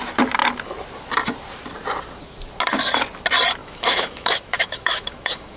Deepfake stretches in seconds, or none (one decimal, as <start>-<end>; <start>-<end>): 3.6-5.6